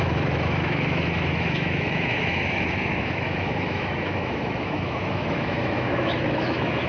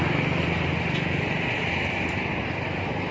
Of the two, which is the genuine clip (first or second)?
second